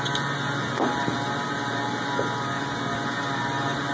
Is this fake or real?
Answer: real